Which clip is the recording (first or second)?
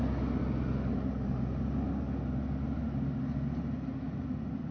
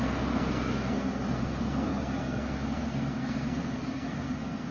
first